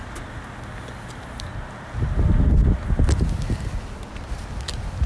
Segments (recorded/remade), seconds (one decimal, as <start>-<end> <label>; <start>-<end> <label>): 0.0-5.1 recorded